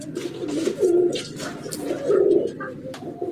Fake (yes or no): yes